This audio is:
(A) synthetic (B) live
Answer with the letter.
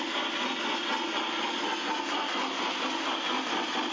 B